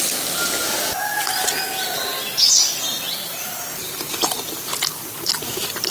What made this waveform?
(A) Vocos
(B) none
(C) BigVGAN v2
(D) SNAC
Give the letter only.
B